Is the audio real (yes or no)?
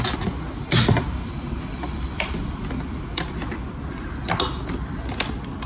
yes